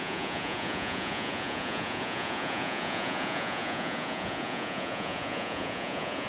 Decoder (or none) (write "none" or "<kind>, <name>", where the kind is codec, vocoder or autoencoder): vocoder, Vocos